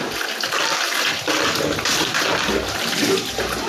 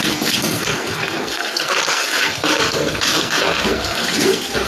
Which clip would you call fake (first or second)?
second